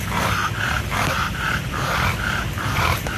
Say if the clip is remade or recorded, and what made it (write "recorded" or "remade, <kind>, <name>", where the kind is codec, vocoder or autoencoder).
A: recorded